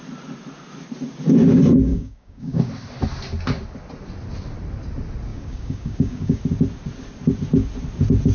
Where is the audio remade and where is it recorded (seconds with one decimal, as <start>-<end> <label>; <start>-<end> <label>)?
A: 0.0-1.9 recorded; 1.9-2.7 remade; 2.7-5.3 recorded; 5.3-6.4 remade; 6.4-8.3 recorded